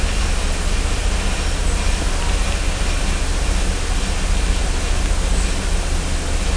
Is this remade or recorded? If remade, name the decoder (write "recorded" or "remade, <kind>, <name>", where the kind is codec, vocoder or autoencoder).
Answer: recorded